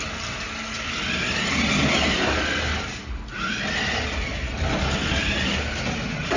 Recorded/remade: recorded